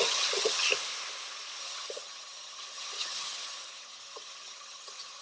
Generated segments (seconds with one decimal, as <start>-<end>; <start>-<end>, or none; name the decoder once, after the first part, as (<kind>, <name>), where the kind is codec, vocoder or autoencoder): 0.0-0.7 (vocoder, HiFi-GAN); 1.6-5.2